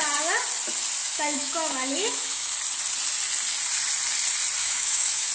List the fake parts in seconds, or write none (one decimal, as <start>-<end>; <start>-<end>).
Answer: 1.0-2.5; 4.6-5.3